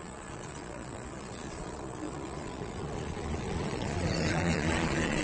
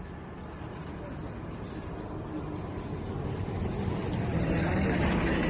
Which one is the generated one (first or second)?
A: first